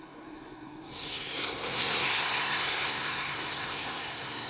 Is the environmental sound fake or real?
fake